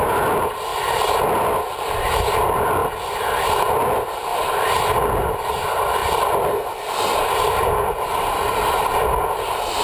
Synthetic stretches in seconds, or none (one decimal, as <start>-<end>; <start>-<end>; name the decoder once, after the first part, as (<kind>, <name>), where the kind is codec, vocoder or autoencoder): 0.7-1.2 (vocoder, BigVGAN v2); 2.8-3.4; 4.3-4.8; 6.0-8.9